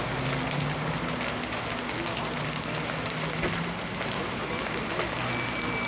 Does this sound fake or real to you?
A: real